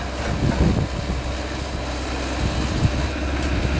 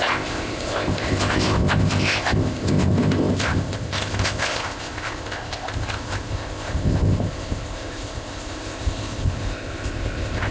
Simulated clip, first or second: second